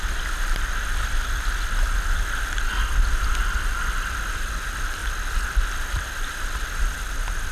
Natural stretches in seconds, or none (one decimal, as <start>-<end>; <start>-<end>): 0.0-7.5